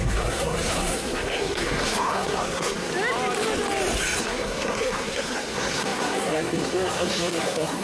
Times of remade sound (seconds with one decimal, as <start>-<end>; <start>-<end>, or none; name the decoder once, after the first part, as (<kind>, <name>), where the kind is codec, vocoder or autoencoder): 0.0-2.9 (codec, SNAC); 4.2-7.8